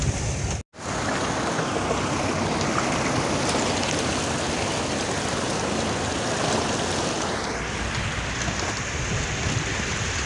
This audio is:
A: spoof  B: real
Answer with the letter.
B